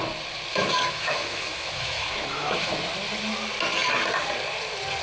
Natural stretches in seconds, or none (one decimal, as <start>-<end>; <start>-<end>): 0.0-0.5; 2.7-5.0